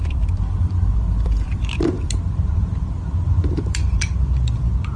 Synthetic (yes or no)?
yes